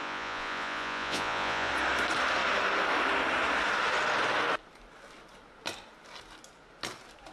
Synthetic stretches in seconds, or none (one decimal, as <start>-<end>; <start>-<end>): 0.0-1.7